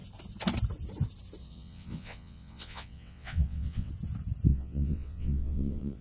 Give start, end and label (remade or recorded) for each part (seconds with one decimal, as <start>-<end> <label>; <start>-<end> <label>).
0.0-1.4 recorded; 1.4-3.9 remade; 3.9-4.5 recorded; 4.5-6.0 remade